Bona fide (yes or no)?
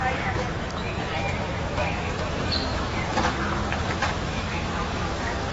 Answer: no